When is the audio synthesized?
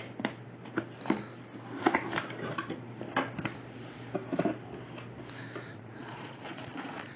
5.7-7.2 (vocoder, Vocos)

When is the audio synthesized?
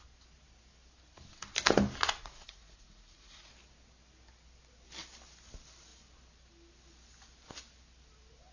2.2-3.5 (vocoder, Vocos)